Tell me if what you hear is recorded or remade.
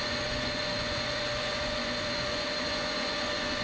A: remade